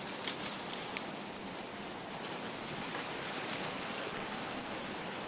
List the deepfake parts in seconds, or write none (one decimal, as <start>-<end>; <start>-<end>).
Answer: 3.6-4.8